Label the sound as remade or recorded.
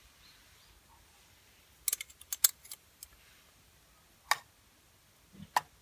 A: recorded